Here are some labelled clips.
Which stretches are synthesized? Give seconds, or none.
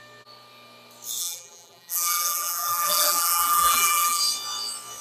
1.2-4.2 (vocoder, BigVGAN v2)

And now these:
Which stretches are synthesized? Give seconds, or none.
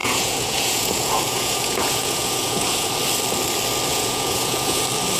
0.0-2.9 (vocoder, Vocos); 3.9-4.8